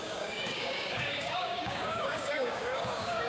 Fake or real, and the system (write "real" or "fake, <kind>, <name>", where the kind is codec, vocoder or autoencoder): fake, codec, DAC